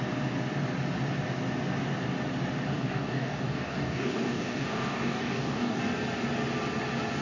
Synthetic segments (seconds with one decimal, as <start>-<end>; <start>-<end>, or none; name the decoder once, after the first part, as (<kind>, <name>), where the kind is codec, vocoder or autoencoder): 2.7-5.8 (codec, DAC)